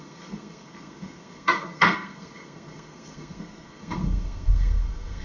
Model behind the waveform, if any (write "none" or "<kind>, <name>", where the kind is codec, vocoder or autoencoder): codec, SNAC